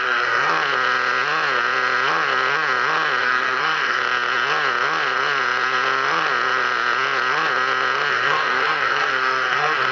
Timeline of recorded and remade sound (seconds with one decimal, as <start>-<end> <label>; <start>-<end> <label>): 0.0-0.5 remade; 0.5-3.2 recorded; 3.2-4.0 remade; 4.0-8.1 recorded; 8.1-9.9 remade